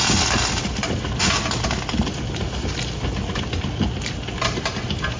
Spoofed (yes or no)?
no